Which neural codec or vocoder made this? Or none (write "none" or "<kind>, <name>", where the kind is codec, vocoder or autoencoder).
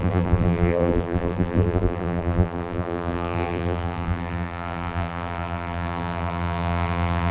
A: vocoder, BigVGAN v2